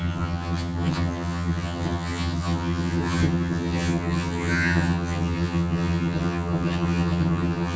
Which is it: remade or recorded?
remade